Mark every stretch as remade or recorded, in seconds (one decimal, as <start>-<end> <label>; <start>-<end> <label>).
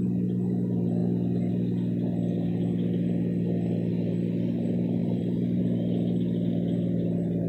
0.0-5.0 recorded; 5.0-5.6 remade; 5.6-7.5 recorded